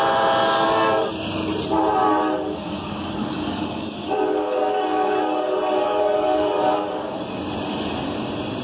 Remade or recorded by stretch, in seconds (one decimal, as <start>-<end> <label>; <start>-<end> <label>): 0.0-0.4 recorded; 0.4-1.1 remade; 1.1-2.0 recorded; 2.0-7.2 remade; 7.2-8.6 recorded